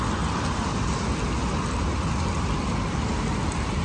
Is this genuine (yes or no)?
yes